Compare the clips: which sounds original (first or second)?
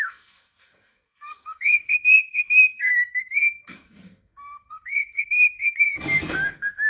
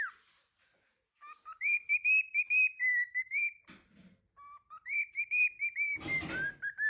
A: second